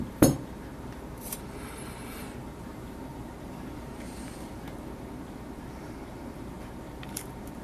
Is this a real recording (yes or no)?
no